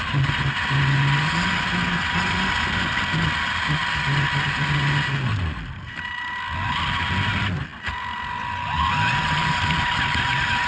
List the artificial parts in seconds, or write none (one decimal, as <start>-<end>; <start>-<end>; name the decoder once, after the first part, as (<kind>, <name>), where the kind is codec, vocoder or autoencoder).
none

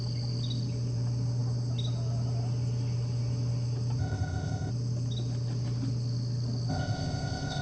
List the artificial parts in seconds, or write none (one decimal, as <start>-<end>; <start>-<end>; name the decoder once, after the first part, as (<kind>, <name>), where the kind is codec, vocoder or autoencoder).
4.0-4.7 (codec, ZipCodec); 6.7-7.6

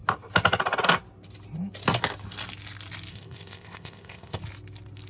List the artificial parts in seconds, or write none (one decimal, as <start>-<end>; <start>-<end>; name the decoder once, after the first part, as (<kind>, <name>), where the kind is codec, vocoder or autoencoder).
3.1-4.4 (codec, ZipCodec)